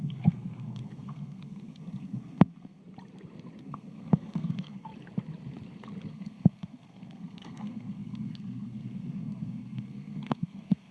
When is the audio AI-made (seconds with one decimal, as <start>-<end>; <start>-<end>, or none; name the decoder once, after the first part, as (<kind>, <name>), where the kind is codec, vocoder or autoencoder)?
0.0-2.8 (codec, SNAC); 3.6-4.9; 6.1-10.9